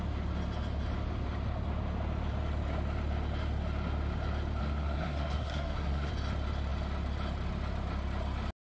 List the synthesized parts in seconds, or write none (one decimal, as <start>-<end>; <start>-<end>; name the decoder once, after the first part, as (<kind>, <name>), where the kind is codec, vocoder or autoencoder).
4.6-6.1 (codec, SNAC)